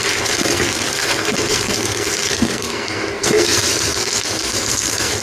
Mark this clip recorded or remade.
remade